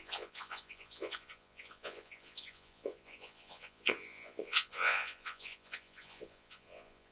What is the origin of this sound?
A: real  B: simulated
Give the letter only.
B